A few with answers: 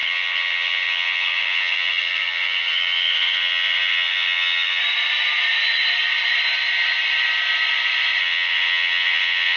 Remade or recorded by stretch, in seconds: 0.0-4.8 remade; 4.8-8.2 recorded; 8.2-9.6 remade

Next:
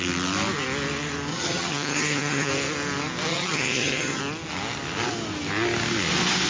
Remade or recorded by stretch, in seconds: 0.0-1.3 recorded; 1.3-2.5 remade; 2.5-3.3 recorded; 3.3-4.2 remade; 4.2-6.5 recorded

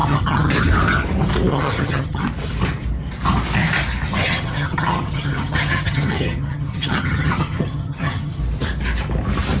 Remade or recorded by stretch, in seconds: 0.0-0.5 remade; 0.5-1.5 recorded; 1.5-2.2 remade; 2.2-4.1 recorded; 4.1-8.4 remade; 8.4-9.6 recorded

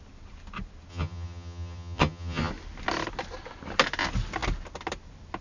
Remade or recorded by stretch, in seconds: 0.0-0.9 recorded; 0.9-2.5 remade; 2.5-5.4 recorded

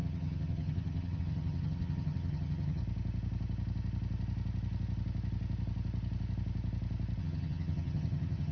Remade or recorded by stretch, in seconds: 0.0-2.8 remade; 2.8-7.2 recorded; 7.2-8.5 remade

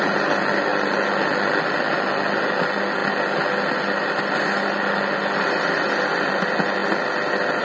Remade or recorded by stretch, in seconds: 0.0-7.6 recorded